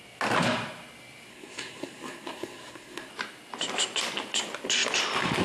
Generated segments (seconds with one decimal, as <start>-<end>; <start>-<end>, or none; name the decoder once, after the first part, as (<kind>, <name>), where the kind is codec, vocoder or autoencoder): 1.3-3.1 (codec, SNAC)